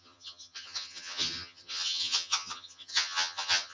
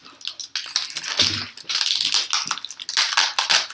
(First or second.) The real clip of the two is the second